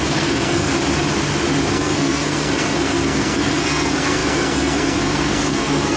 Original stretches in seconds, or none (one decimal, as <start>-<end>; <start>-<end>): 0.7-1.7